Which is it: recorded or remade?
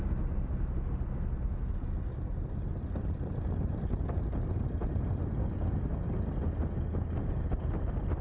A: recorded